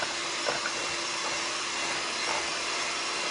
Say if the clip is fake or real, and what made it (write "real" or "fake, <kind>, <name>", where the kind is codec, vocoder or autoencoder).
fake, vocoder, BigVGAN v2